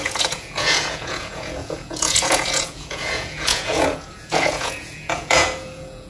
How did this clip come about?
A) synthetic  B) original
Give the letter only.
A